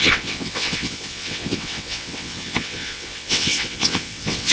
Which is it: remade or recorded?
remade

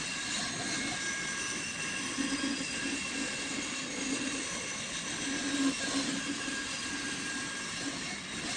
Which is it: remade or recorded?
recorded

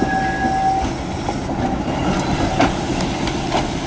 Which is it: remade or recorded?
recorded